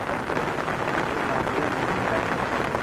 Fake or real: real